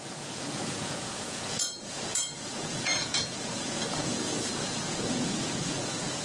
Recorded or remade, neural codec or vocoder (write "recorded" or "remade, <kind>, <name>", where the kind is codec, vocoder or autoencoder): remade, vocoder, Vocos